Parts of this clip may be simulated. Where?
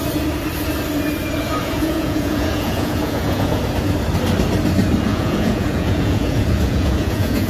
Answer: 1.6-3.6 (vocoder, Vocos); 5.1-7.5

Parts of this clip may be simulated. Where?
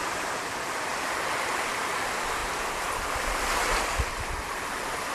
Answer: none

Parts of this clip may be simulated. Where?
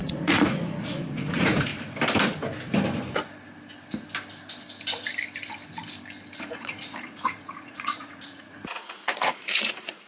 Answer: 0.0-1.7 (vocoder, Vocos); 6.5-10.1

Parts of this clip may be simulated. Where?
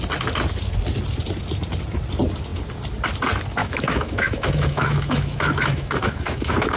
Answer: 3.6-6.8 (autoencoder, DAC-VAE)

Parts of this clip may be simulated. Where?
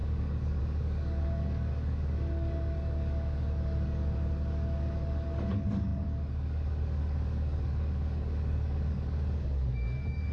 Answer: 0.0-10.3 (codec, DAC)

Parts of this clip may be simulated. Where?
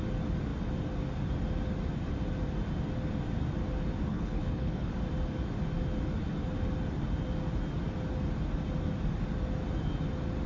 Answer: 4.1-4.9 (codec, HILCodec)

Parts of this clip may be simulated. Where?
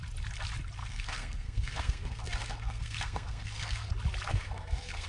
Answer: 0.8-3.9 (codec, SNAC); 4.3-5.1